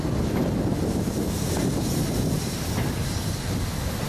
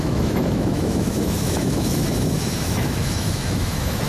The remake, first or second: second